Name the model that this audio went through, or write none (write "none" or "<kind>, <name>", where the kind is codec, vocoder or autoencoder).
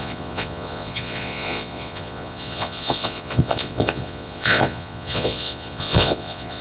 vocoder, Vocos